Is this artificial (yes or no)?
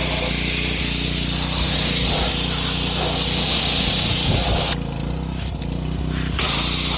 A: no